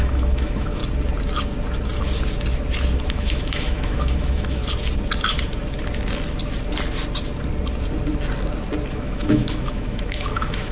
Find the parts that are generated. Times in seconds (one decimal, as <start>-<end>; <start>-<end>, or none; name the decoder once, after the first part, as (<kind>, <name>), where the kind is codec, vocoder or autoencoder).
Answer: 0.0-0.8 (autoencoder, DAC-VAE); 3.1-4.6; 8.9-10.7